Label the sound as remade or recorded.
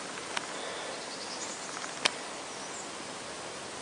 recorded